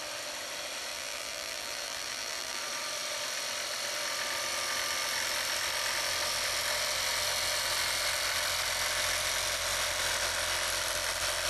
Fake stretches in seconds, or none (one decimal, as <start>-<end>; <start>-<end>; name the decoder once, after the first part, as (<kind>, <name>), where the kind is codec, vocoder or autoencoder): 0.9-2.6 (vocoder, BigVGAN v2)